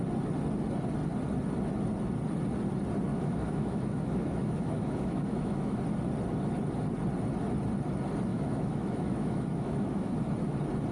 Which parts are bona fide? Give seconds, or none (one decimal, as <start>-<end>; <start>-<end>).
0.0-3.1; 5.8-8.3; 10.1-10.9